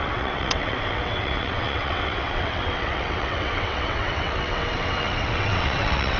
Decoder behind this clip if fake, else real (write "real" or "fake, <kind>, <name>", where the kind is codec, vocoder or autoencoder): fake, vocoder, WaveNeXt